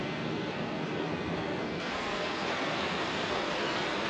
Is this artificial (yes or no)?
yes